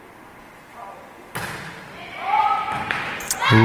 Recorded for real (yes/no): yes